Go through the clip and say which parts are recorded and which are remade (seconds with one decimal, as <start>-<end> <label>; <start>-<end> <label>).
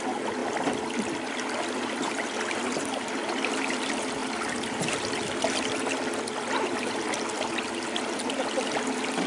0.0-9.3 recorded